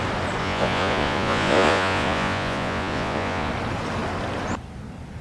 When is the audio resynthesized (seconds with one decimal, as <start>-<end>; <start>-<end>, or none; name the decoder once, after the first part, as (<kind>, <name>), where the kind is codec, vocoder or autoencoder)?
0.4-3.5 (vocoder, Vocos)